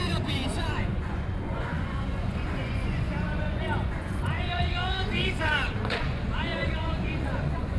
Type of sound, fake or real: fake